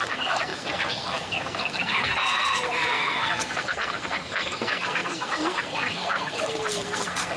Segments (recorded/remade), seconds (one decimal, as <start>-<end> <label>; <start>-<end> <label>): 0.0-7.4 remade